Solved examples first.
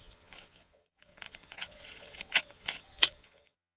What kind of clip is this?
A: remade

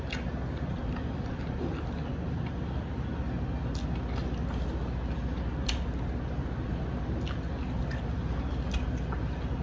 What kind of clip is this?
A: recorded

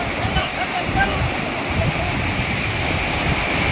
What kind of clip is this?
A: recorded